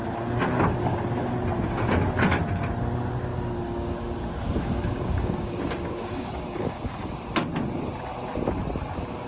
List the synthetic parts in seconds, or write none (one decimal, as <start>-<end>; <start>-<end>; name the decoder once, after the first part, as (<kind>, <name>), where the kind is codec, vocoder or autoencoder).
0.8-1.3 (codec, DAC); 3.3-7.1